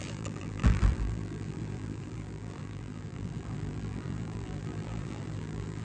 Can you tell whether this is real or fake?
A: fake